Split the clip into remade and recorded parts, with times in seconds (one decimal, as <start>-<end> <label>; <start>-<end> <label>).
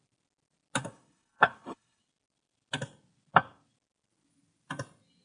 0.0-0.8 recorded; 0.8-2.0 remade; 2.0-5.2 recorded